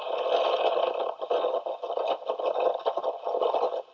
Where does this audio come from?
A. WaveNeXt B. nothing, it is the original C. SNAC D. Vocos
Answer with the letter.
B